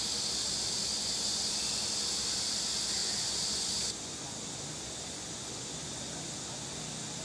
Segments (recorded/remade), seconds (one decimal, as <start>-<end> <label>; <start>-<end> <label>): 0.0-0.9 recorded; 0.9-1.5 remade; 1.5-3.0 recorded; 3.0-6.8 remade; 6.8-7.2 recorded